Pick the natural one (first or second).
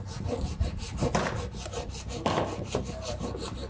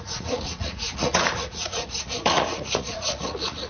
first